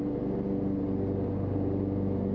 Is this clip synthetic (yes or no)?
no